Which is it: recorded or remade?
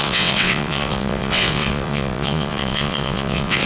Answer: remade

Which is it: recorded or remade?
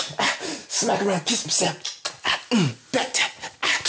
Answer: recorded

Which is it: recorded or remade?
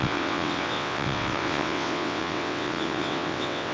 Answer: remade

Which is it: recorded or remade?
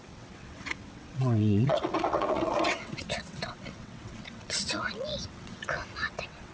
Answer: remade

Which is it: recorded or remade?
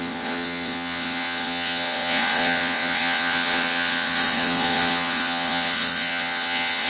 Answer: remade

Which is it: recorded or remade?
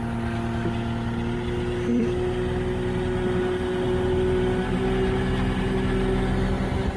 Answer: recorded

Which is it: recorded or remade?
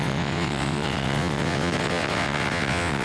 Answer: remade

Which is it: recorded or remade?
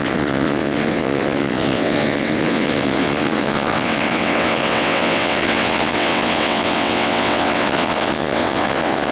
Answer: remade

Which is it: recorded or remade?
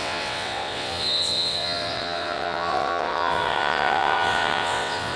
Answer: remade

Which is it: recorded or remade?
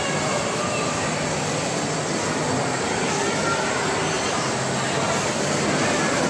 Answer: recorded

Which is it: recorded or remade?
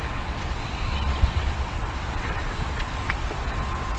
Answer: remade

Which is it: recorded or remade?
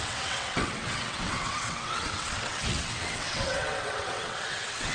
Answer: remade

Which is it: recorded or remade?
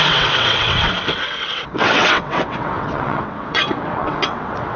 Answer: remade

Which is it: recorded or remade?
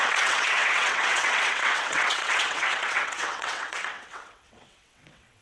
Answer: remade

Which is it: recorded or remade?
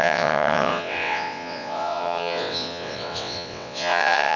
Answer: remade